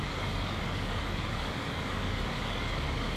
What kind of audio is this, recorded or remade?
remade